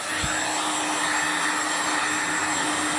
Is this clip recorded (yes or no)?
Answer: yes